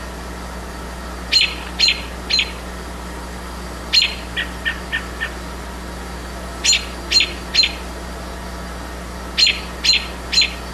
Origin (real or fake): real